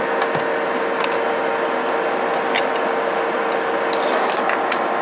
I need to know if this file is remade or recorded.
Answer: recorded